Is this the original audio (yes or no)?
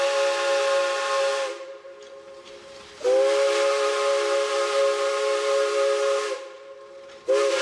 yes